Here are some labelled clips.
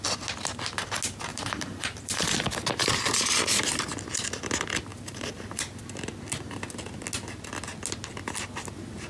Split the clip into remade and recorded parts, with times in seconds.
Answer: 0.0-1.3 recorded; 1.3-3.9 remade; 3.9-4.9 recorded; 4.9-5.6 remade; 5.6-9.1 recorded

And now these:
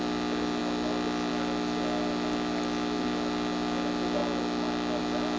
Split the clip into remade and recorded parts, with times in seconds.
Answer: 0.0-5.4 recorded

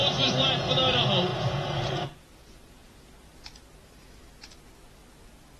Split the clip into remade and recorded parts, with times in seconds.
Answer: 0.0-1.3 recorded; 1.3-3.1 remade; 3.1-5.6 recorded